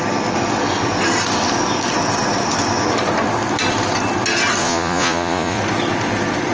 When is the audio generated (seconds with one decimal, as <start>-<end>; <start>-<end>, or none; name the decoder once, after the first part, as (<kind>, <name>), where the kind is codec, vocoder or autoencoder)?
4.6-5.6 (vocoder, Vocos)